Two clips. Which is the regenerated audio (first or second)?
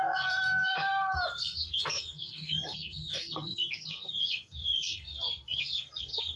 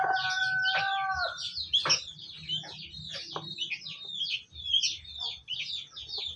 first